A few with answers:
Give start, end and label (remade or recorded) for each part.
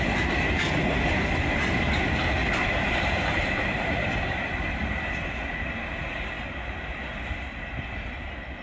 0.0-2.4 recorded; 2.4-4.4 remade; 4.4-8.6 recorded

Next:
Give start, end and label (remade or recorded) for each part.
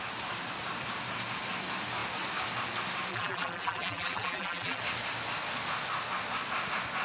0.0-3.1 recorded; 3.1-4.8 remade; 4.8-7.0 recorded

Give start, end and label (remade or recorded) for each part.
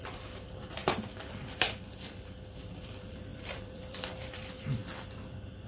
0.0-4.8 remade; 4.8-5.7 recorded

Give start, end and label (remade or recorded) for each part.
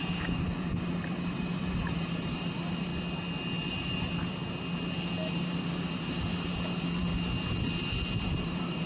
0.0-2.9 remade; 2.9-3.7 recorded; 3.7-4.4 remade; 4.4-5.3 recorded; 5.3-7.1 remade; 7.1-8.2 recorded; 8.2-8.9 remade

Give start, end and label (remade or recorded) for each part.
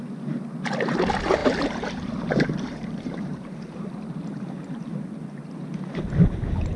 0.0-1.4 recorded; 1.4-5.5 remade; 5.5-6.8 recorded